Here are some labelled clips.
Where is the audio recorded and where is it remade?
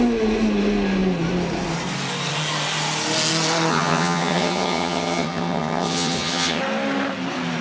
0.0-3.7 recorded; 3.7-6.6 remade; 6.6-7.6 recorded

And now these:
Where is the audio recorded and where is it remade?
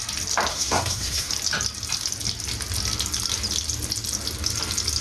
0.0-0.5 recorded; 0.5-1.3 remade; 1.3-5.0 recorded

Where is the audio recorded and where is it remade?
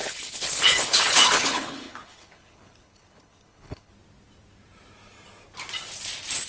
0.0-3.9 remade; 3.9-6.5 recorded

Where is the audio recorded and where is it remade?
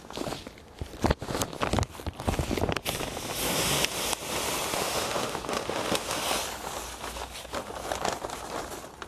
0.0-4.7 recorded; 4.7-6.2 remade; 6.2-9.1 recorded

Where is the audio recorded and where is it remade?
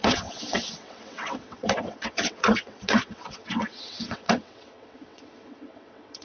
0.0-6.2 remade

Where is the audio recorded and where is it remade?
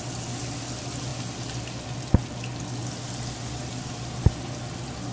0.0-5.1 recorded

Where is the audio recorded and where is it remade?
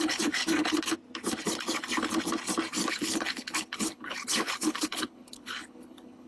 0.0-0.4 remade; 0.4-2.9 recorded; 2.9-6.3 remade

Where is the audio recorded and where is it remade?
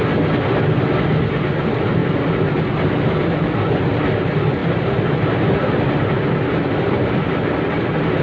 0.0-8.2 recorded